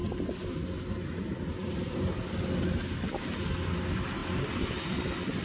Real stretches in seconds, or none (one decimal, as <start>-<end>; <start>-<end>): 0.0-5.4